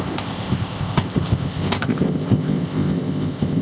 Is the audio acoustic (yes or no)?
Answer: no